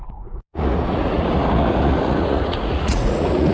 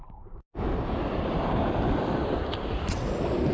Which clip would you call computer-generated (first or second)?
first